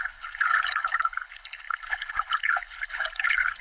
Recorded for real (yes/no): no